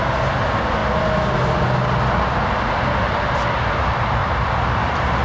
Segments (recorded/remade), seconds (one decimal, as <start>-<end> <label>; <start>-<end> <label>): 0.0-4.2 recorded; 4.2-5.2 remade